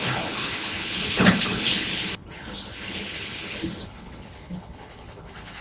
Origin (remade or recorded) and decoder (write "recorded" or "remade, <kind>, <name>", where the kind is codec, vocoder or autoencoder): remade, codec, HILCodec